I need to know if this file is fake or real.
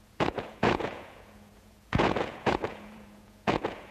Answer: fake